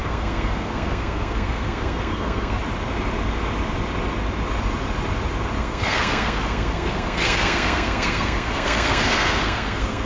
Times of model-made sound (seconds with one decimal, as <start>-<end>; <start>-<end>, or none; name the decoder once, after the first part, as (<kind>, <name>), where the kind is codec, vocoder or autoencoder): 0.0-2.6 (codec, SNAC); 5.6-10.1